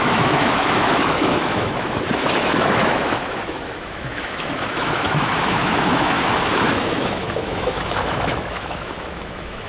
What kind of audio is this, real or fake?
fake